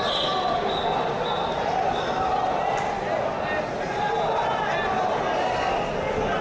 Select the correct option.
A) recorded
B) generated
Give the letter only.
A